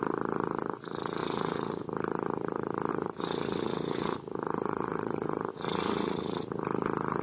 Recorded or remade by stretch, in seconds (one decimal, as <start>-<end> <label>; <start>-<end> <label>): 0.0-1.2 recorded; 1.2-1.8 remade; 1.8-2.9 recorded; 2.9-5.5 remade; 5.5-7.2 recorded